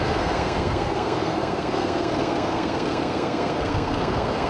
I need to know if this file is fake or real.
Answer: fake